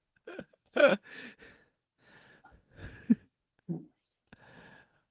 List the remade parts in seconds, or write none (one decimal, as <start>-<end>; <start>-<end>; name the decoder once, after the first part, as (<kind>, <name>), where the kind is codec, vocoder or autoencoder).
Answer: 0.0-0.9 (vocoder, WaveNeXt); 1.5-5.1